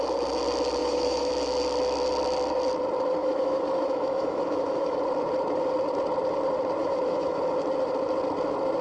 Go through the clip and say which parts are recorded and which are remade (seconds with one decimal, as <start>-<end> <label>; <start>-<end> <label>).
0.0-0.8 recorded; 0.8-1.3 remade; 1.3-3.2 recorded; 3.2-5.0 remade; 5.0-6.8 recorded; 6.8-7.4 remade; 7.4-8.8 recorded